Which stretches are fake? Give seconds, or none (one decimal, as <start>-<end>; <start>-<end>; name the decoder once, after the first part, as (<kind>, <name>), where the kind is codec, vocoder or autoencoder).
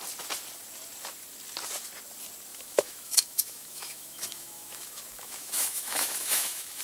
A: 2.5-6.8 (autoencoder, DAC-VAE)